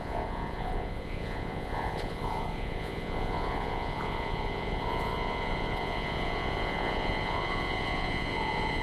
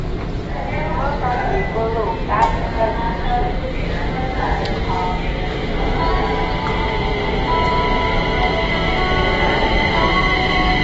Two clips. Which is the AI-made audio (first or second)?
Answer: first